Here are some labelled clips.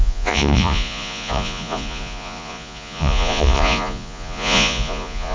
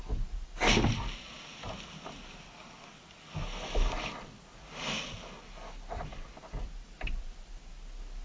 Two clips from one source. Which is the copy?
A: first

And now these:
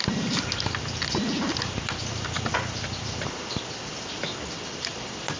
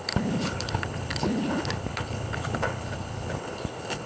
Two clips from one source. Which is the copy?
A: second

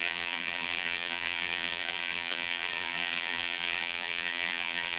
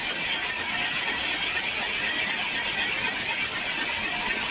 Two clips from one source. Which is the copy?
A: first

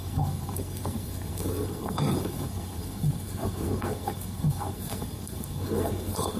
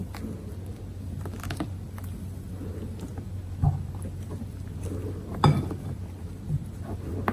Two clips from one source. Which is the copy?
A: first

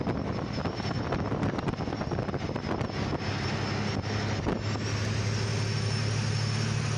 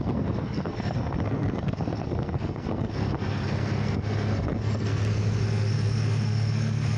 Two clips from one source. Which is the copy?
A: second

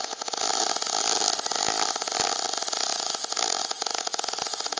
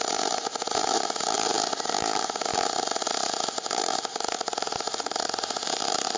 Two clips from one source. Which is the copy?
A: second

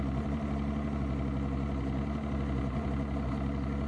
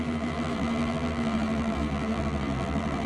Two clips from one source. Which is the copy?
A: second